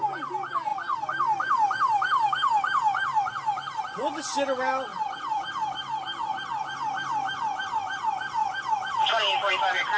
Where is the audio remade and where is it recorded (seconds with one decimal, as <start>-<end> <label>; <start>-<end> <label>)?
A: 0.0-10.0 recorded